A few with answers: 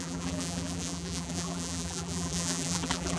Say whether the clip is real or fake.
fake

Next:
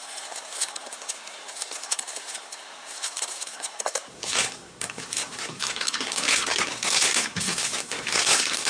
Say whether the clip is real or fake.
fake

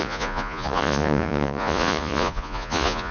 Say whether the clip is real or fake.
fake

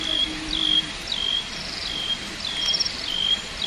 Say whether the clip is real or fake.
real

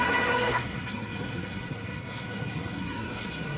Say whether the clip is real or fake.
fake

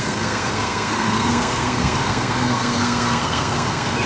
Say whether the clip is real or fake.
fake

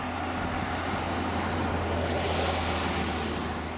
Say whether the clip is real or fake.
real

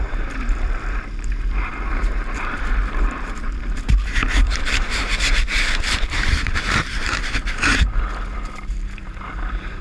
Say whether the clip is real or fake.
fake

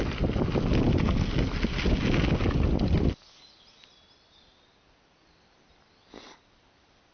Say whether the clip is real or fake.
real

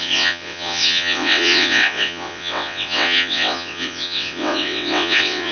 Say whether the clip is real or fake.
fake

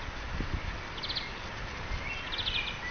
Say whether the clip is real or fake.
real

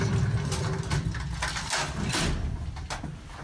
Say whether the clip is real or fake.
real